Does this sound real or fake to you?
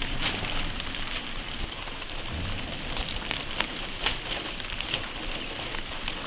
fake